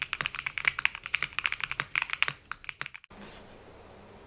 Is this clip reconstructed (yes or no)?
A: no